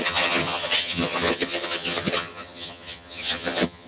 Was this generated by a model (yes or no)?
yes